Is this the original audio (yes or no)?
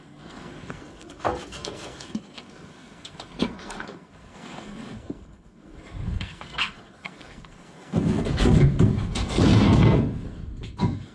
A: no